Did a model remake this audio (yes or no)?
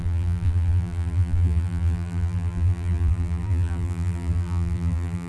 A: yes